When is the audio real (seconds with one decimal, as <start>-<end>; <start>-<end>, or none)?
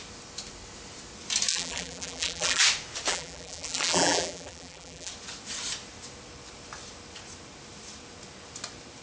0.0-1.5; 2.6-3.1; 5.1-9.0